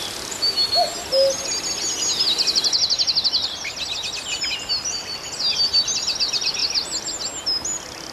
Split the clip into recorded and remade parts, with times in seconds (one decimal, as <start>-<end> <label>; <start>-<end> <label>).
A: 0.0-8.1 recorded